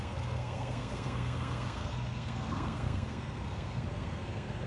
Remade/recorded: remade